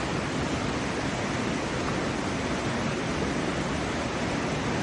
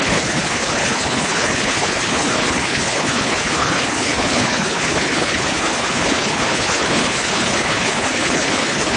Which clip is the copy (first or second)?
second